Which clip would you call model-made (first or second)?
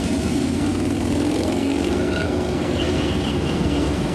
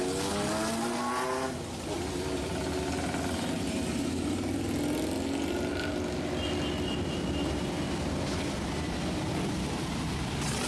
first